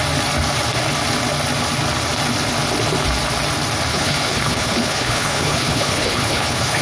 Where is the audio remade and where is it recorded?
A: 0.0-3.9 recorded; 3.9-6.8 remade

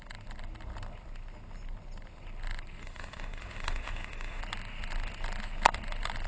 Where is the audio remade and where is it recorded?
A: 0.0-2.8 recorded; 2.8-4.4 remade; 4.4-6.3 recorded

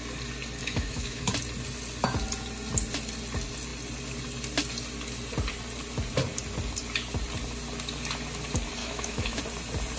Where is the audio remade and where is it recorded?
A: 0.0-0.6 recorded; 0.6-1.3 remade; 1.3-8.8 recorded; 8.8-9.4 remade; 9.4-10.0 recorded